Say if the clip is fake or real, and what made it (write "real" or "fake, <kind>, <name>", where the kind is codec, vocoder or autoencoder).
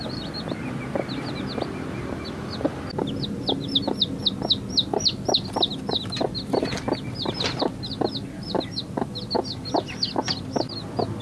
real